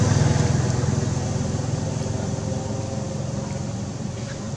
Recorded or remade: recorded